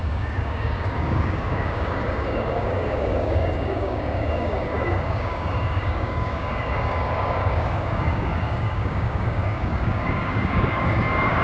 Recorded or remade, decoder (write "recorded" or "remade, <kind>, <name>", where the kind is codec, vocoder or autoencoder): remade, codec, DAC